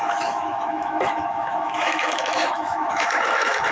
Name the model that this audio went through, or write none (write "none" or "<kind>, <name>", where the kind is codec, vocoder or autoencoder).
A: autoencoder, DAC-VAE